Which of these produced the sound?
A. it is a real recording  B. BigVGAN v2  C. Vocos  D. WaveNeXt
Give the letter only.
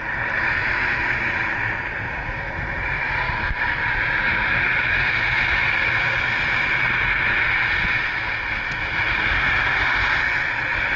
A